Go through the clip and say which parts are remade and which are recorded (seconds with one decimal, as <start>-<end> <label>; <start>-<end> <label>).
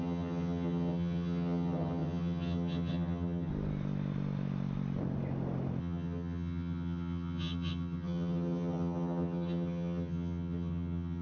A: 0.0-3.5 remade; 3.5-5.8 recorded; 5.8-11.2 remade